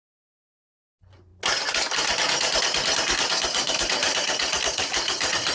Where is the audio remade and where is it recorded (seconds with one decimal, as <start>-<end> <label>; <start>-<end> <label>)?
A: 0.0-5.5 recorded